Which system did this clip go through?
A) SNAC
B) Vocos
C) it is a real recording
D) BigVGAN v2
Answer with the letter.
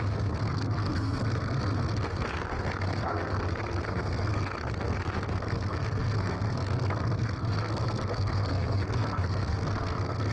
A